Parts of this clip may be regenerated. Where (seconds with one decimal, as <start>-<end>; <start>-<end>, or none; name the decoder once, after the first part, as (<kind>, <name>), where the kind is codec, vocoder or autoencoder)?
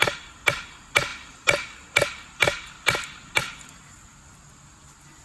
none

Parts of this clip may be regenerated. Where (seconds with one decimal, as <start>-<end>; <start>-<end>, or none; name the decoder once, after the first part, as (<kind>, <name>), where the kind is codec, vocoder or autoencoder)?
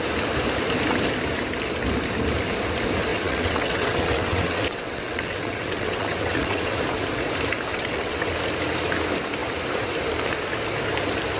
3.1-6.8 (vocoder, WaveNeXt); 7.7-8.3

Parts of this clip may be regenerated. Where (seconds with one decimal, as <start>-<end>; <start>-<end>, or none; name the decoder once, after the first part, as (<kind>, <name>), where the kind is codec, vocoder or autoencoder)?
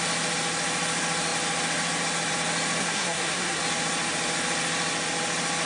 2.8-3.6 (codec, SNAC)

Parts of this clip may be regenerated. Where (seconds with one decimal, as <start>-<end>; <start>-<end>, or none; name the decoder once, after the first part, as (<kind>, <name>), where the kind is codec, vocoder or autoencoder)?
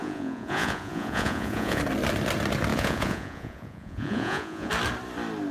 0.0-1.8 (vocoder, Vocos); 2.7-4.7